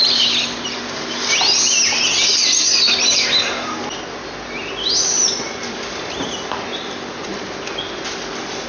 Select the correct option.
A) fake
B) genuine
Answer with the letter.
B